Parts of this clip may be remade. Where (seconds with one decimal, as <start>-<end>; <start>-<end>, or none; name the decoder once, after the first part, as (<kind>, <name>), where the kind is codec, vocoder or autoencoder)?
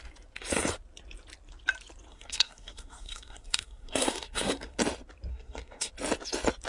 2.1-4.8 (codec, SNAC); 5.3-5.9